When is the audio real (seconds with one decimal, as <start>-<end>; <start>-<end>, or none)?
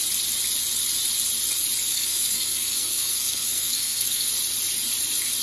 0.0-1.9; 4.3-5.4